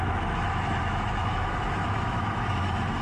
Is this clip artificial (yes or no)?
yes